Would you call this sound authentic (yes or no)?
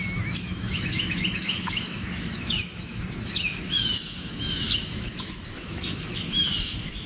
no